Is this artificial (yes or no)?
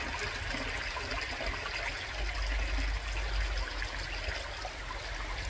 no